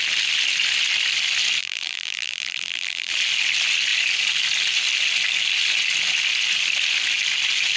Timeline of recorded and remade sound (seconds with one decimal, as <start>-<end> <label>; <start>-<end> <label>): 0.0-1.6 recorded; 1.6-3.1 remade; 3.1-7.8 recorded